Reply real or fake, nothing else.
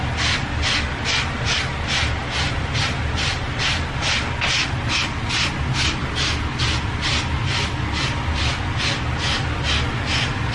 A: real